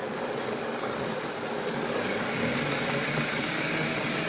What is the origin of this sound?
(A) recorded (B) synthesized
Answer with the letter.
B